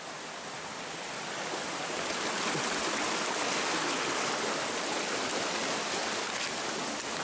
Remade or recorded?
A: recorded